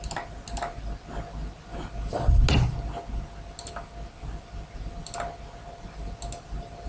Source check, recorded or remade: recorded